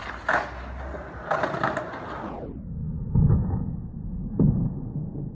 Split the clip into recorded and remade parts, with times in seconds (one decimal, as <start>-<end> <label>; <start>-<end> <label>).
0.0-2.7 recorded; 2.7-5.3 remade